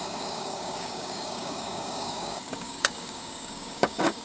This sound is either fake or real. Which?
fake